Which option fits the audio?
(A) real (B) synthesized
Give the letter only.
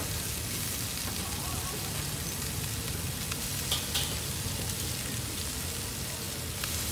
A